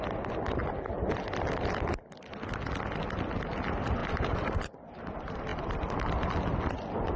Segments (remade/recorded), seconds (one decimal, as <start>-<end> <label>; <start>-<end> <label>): 0.0-4.0 recorded; 4.0-5.1 remade; 5.1-7.2 recorded